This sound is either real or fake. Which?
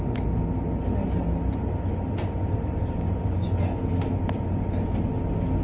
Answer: real